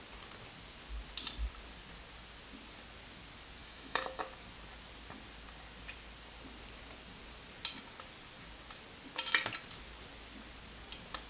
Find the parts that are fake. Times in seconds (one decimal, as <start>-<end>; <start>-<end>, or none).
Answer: 3.6-4.2